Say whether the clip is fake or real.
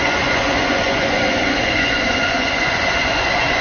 fake